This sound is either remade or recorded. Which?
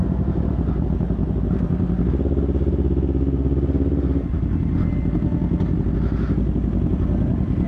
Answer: recorded